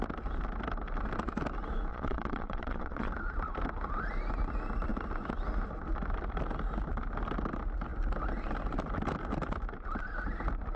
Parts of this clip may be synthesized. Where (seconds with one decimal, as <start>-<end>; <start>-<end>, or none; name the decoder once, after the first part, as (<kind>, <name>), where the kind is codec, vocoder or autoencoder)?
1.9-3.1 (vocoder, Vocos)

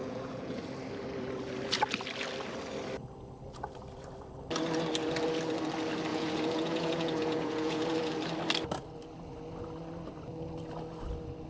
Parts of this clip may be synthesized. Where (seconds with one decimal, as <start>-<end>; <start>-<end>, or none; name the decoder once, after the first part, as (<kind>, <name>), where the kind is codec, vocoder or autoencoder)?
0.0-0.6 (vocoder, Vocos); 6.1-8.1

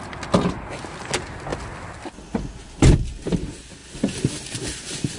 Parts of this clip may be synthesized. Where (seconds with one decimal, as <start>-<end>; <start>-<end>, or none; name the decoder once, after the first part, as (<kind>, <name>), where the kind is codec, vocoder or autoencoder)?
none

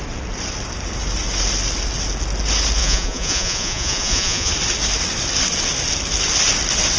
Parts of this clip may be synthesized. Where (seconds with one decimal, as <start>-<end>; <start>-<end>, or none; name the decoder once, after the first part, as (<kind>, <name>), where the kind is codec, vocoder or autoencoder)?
2.8-4.5 (vocoder, Vocos)

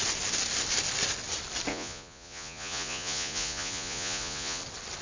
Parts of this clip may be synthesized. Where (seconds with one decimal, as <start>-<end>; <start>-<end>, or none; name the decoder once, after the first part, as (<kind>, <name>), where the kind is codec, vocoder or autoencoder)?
1.7-4.6 (vocoder, Vocos)